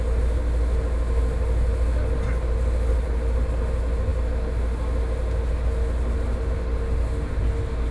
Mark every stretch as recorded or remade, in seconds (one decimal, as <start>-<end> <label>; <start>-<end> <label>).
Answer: 0.0-7.9 recorded